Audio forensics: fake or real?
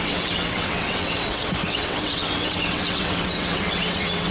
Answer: fake